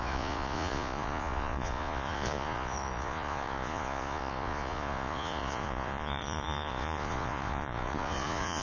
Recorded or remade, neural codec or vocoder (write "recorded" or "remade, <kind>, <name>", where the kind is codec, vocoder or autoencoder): remade, vocoder, Vocos